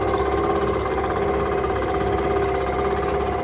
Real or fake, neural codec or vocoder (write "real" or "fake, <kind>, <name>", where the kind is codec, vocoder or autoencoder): real